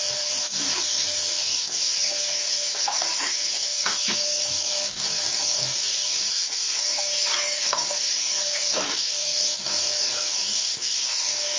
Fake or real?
fake